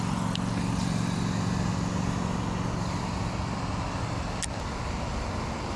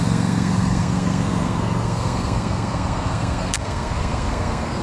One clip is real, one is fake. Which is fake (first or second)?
second